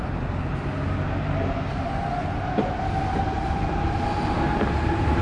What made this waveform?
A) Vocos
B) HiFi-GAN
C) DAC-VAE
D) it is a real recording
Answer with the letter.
D